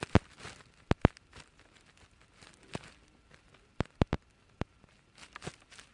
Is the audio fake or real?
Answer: real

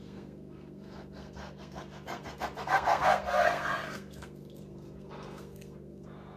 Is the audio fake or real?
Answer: fake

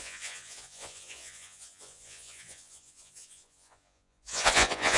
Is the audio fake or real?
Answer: fake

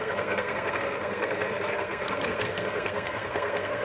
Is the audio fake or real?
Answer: fake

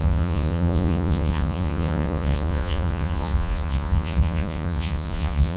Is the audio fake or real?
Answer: fake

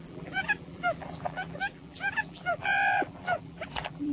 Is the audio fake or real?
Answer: fake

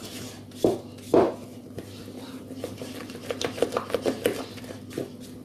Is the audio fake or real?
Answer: real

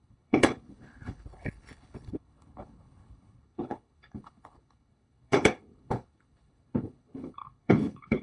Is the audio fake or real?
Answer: fake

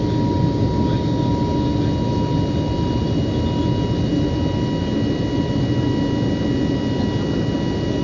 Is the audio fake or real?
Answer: real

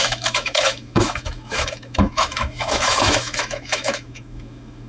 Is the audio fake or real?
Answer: fake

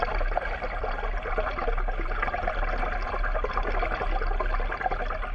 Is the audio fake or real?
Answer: real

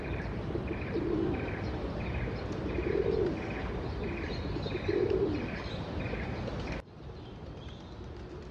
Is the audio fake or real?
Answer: real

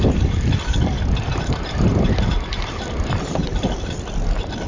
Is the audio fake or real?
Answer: fake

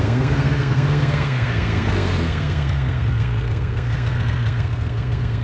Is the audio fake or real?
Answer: fake